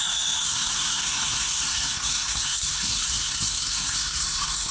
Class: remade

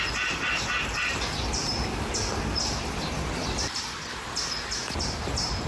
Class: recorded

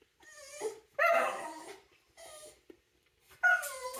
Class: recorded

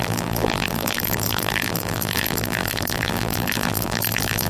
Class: remade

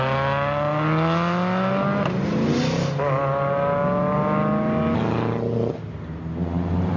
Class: recorded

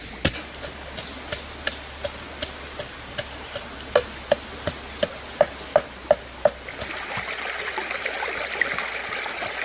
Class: recorded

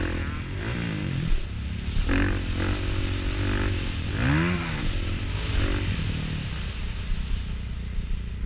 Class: recorded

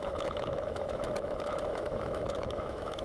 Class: remade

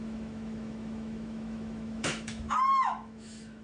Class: remade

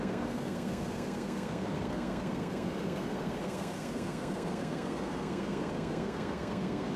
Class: remade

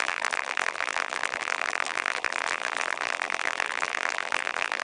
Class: remade